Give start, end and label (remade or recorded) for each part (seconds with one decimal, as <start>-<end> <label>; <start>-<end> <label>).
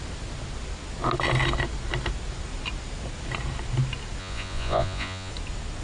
0.0-4.2 recorded; 4.2-5.3 remade; 5.3-5.8 recorded